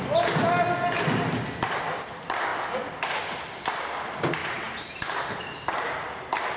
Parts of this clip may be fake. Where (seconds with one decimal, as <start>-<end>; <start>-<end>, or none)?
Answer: 4.4-5.7